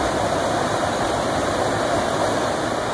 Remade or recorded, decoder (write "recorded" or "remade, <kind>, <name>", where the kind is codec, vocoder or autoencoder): recorded